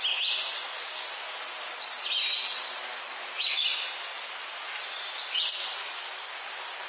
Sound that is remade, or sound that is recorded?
recorded